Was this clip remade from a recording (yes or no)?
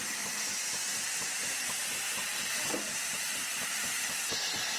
yes